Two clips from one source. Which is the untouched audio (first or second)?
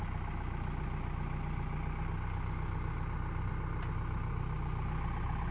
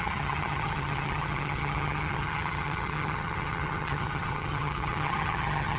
first